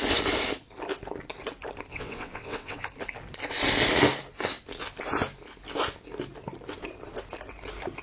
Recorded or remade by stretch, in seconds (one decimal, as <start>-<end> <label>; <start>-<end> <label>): 0.0-1.9 recorded; 1.9-2.9 remade; 2.9-8.0 recorded